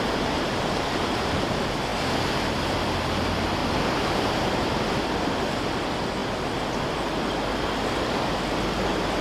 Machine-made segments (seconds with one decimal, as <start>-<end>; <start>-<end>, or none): none